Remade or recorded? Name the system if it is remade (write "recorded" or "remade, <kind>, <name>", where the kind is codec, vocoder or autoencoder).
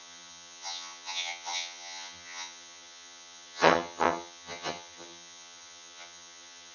remade, vocoder, HiFi-GAN